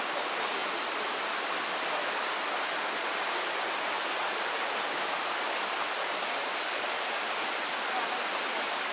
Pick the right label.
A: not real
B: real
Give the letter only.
B